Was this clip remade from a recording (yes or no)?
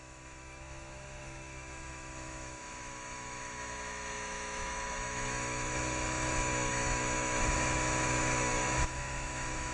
yes